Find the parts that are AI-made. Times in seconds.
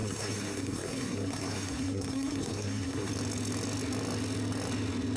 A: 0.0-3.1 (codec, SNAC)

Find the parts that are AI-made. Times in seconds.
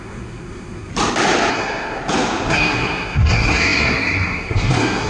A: 0.0-0.9 (codec, SNAC); 1.5-2.0; 2.5-5.1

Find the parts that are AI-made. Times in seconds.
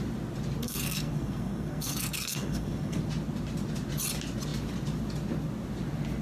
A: 0.6-3.0 (codec, SNAC)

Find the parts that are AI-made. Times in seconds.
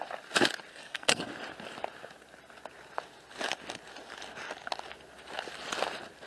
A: 0.7-1.3 (codec, SNAC)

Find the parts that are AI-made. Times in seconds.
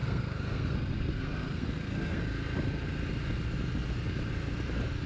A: 0.0-2.2 (codec, SNAC)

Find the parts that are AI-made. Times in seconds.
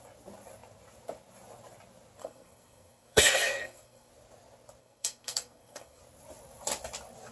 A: 2.2-4.1 (codec, SNAC); 4.8-6.0